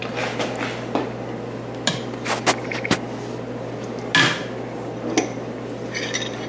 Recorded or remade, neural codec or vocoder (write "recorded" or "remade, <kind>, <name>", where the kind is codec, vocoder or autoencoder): recorded